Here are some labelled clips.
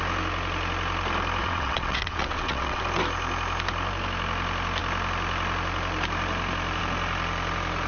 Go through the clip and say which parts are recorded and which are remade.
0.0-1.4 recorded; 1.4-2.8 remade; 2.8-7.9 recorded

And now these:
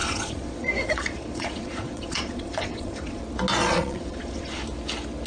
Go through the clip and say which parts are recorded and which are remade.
0.0-3.2 remade; 3.2-3.6 recorded; 3.6-4.6 remade; 4.6-5.3 recorded

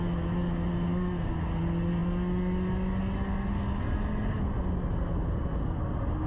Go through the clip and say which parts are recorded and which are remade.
0.0-6.3 recorded

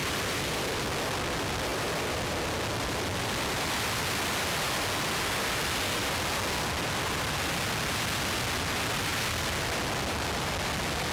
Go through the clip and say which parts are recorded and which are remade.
0.0-0.6 remade; 0.6-1.7 recorded; 1.7-2.3 remade; 2.3-11.1 recorded

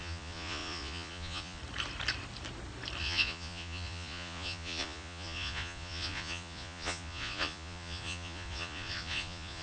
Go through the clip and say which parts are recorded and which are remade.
0.0-1.6 remade; 1.6-3.0 recorded; 3.0-9.6 remade

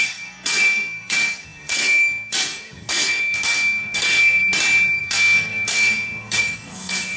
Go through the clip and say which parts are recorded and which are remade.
0.0-4.4 remade; 4.4-5.0 recorded; 5.0-7.2 remade

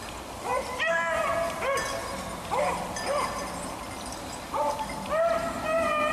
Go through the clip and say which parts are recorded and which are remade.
0.0-6.1 recorded